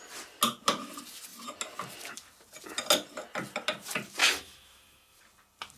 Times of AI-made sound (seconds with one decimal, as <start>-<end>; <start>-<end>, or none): 4.2-5.2